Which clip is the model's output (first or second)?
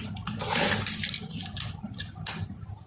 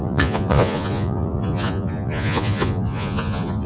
second